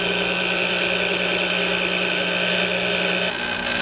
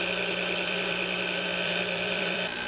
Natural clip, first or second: first